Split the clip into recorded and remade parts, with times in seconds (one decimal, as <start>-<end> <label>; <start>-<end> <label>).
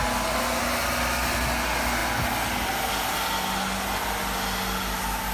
0.0-5.3 recorded